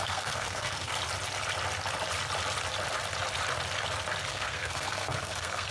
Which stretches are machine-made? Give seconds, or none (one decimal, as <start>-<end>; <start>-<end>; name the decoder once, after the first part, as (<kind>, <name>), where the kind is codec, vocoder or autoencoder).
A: 0.0-0.9 (codec, SNAC); 4.3-5.7